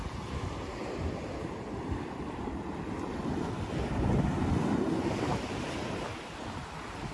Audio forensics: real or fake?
real